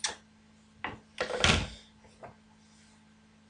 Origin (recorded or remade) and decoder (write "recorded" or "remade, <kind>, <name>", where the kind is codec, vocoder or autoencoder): recorded